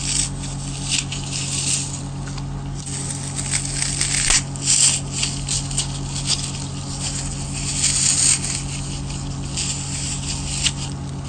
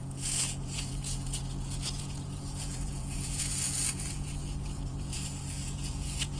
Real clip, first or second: first